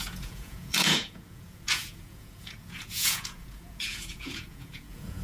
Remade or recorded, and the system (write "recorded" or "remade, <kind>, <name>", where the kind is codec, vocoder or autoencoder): remade, vocoder, Vocos